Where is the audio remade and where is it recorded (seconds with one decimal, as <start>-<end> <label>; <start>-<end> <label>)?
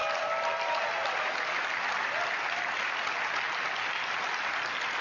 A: 0.0-5.0 recorded